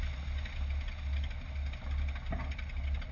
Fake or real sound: real